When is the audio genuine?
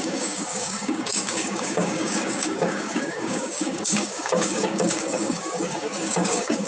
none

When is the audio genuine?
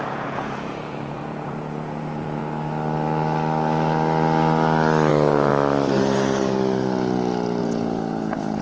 2.4-5.1; 5.5-7.6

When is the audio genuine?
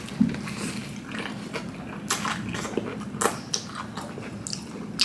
0.0-5.0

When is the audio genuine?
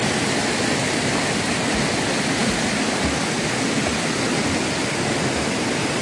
0.0-6.0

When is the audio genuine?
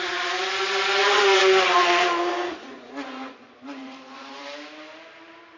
0.0-1.0; 4.4-5.6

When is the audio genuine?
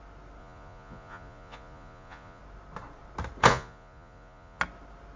0.0-0.4; 2.4-3.5; 4.6-5.2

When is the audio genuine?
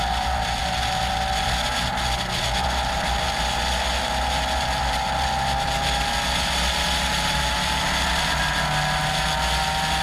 0.0-10.0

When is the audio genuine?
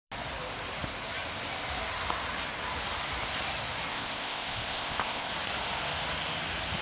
0.0-3.9; 5.3-6.8